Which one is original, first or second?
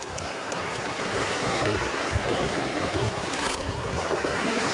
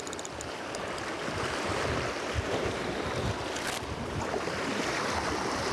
second